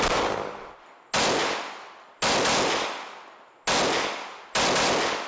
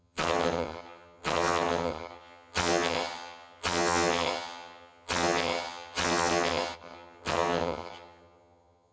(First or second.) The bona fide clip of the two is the first